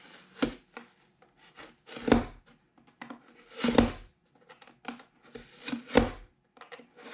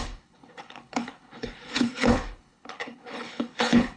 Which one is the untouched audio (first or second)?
first